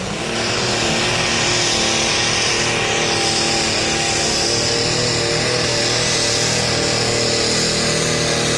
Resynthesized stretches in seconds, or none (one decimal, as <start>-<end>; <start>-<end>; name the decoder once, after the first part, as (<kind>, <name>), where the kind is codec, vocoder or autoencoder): none